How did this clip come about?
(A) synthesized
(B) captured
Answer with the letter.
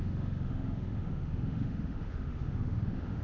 A